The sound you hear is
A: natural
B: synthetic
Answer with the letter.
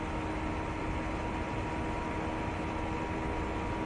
A